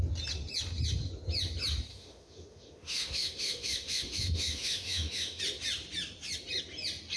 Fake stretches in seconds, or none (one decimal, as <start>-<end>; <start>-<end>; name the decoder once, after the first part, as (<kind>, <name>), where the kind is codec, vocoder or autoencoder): 1.9-5.4 (autoencoder, DAC-VAE)